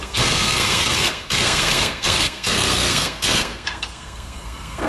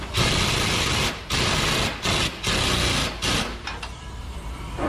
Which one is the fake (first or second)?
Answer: first